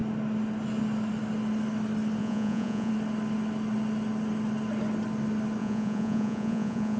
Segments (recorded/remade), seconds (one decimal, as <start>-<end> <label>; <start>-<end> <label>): 0.0-2.2 recorded; 2.2-2.9 remade; 2.9-5.6 recorded; 5.6-7.0 remade

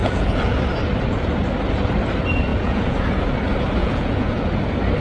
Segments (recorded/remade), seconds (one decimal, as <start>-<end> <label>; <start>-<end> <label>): 0.0-0.6 remade; 0.6-2.5 recorded; 2.5-3.2 remade; 3.2-3.8 recorded; 3.8-4.5 remade; 4.5-5.0 recorded

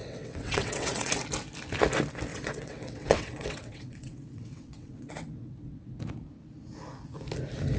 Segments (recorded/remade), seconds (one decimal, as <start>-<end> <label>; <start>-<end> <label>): 0.0-1.1 remade; 1.1-2.3 recorded; 2.3-6.0 remade; 6.0-7.8 recorded

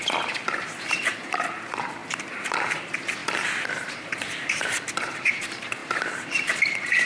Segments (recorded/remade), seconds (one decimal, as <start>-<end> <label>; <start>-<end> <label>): 0.0-3.2 remade; 3.2-3.9 recorded; 3.9-7.1 remade

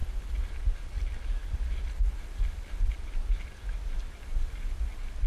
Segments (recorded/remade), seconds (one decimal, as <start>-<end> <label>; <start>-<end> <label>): 0.0-5.3 recorded

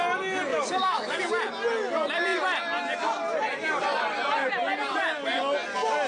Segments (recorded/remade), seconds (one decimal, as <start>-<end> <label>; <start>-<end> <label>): 0.0-0.5 recorded; 0.5-1.2 remade; 1.2-6.1 recorded

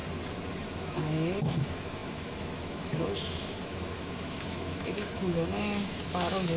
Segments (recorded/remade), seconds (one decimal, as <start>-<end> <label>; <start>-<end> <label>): 0.0-0.8 recorded; 0.8-6.6 remade